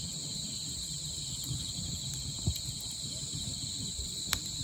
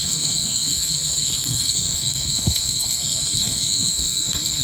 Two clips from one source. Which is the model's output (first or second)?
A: second